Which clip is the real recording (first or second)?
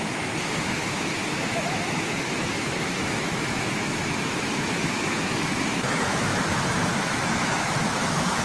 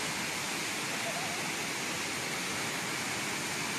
second